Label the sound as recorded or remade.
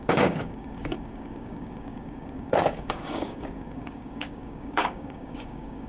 remade